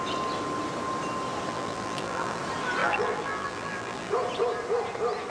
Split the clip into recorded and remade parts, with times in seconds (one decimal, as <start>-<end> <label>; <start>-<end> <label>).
0.0-1.5 recorded; 1.5-2.4 remade; 2.4-2.8 recorded; 2.8-4.1 remade; 4.1-5.3 recorded